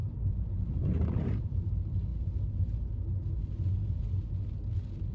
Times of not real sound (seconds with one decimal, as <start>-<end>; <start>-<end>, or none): 0.0-1.7